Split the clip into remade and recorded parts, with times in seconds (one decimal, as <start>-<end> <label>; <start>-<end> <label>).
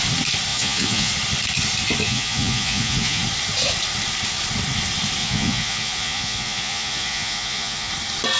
0.0-0.5 recorded; 0.5-1.1 remade; 1.1-2.0 recorded; 2.0-3.2 remade; 3.2-5.2 recorded; 5.2-7.9 remade; 7.9-8.4 recorded